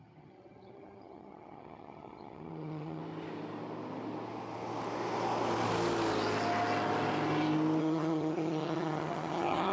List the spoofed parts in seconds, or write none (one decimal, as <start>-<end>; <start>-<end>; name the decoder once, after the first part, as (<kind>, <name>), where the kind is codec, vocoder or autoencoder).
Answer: 0.0-3.0 (vocoder, HiFi-GAN); 7.8-9.7